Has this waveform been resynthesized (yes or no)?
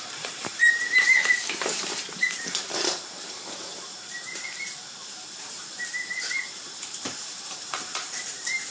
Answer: yes